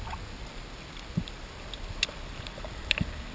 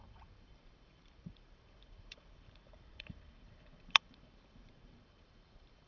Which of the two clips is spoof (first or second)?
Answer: second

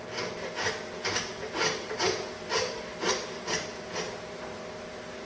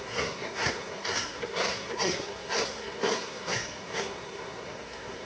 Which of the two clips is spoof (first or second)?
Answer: second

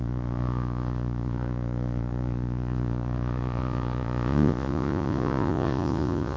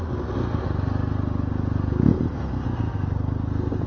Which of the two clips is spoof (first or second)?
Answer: first